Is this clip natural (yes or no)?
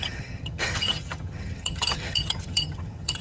no